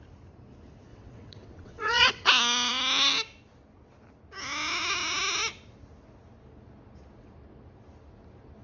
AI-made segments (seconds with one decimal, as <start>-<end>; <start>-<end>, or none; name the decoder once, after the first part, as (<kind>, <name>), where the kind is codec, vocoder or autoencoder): 0.9-2.3 (vocoder, WaveNeXt)